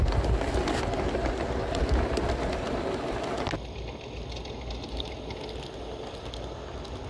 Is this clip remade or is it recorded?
recorded